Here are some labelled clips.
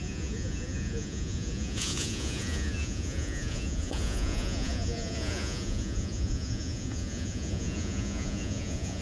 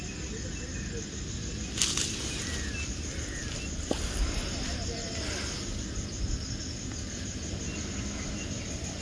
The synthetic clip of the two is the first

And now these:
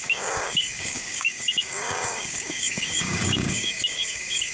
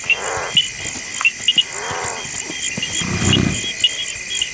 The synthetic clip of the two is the first